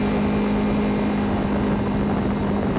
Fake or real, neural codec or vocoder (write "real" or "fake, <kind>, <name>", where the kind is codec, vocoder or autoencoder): real